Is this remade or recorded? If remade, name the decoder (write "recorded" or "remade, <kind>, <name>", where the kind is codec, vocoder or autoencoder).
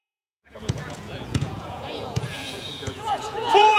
remade, vocoder, Vocos